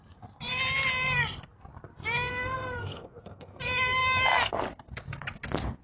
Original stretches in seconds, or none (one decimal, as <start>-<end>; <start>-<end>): 0.0-2.3; 3.6-5.8